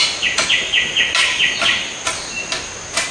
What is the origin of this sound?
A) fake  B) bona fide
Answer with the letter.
B